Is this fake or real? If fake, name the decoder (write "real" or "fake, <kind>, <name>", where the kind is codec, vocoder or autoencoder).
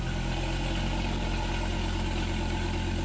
real